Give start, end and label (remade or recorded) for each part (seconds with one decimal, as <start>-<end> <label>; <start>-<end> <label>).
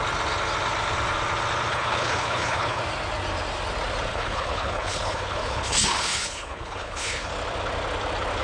0.0-1.7 recorded; 1.7-2.8 remade; 2.8-4.1 recorded; 4.1-7.3 remade; 7.3-8.4 recorded